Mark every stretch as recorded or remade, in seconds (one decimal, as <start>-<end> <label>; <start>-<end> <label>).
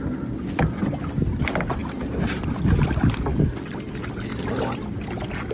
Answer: 0.0-5.5 recorded